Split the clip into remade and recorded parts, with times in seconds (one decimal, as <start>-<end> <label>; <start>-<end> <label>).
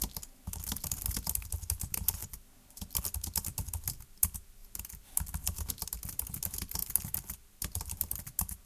0.0-8.7 recorded